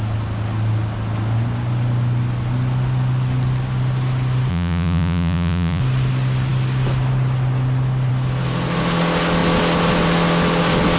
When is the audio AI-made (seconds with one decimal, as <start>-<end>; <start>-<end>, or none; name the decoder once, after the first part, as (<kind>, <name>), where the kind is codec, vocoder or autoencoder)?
4.5-5.8 (vocoder, Vocos)